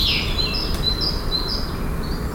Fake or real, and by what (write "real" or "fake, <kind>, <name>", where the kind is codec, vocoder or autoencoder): real